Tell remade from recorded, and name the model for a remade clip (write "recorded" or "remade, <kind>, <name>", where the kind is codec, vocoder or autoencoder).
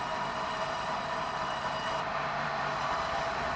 remade, vocoder, BigVGAN v2